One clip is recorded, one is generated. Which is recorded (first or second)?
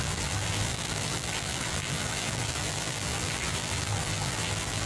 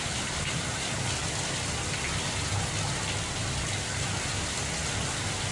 second